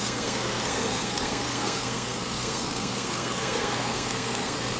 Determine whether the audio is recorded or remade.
remade